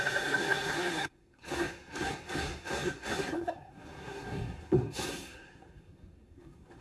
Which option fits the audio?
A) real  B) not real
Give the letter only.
B